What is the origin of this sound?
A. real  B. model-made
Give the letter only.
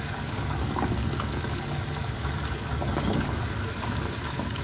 B